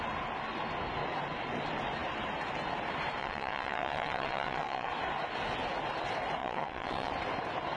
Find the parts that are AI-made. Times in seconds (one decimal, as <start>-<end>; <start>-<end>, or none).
3.2-4.9; 6.4-7.1